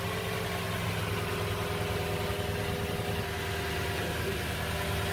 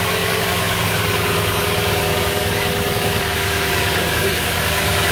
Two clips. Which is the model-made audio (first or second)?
second